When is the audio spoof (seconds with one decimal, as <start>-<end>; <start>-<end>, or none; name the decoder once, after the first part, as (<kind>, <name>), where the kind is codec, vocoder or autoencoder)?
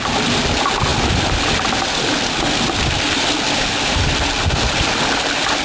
0.9-4.3 (vocoder, BigVGAN v2)